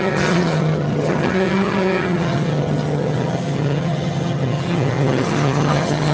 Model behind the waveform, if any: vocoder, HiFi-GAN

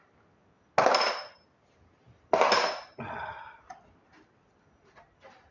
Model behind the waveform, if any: none